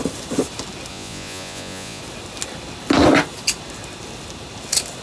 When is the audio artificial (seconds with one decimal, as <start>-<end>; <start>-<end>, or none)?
0.9-2.0